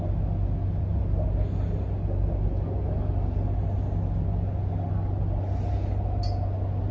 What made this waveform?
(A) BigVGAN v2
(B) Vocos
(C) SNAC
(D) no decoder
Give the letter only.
D